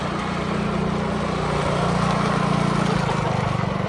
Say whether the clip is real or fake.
real